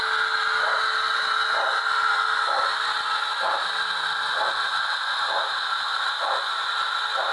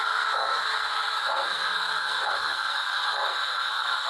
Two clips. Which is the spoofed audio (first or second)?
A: second